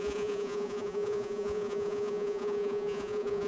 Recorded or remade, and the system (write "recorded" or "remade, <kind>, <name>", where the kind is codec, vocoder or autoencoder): remade, vocoder, Vocos